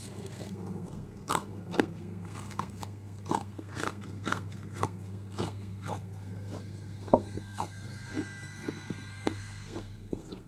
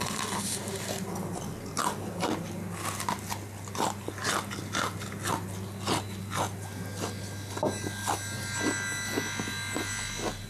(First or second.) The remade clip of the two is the first